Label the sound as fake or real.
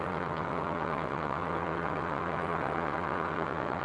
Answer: fake